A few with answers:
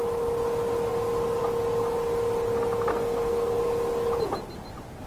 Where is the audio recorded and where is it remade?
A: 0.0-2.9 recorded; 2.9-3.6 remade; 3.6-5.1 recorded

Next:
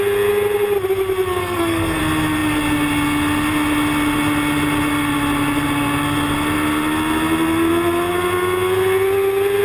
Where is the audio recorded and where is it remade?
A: 0.0-1.4 recorded; 1.4-2.0 remade; 2.0-9.6 recorded

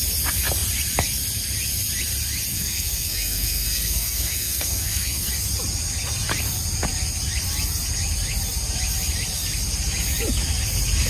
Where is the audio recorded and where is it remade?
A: 0.0-2.5 recorded; 2.5-5.3 remade; 5.3-11.1 recorded

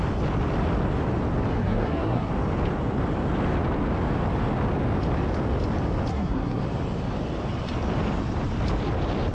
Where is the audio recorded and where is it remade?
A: 0.0-1.5 recorded; 1.5-2.3 remade; 2.3-6.1 recorded; 6.1-6.6 remade; 6.6-9.3 recorded

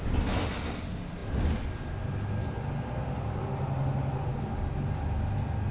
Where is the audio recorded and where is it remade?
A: 0.0-5.7 recorded